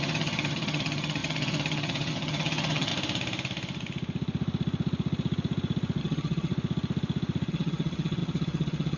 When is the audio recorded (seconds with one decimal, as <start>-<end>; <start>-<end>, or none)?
2.9-6.0; 6.5-7.5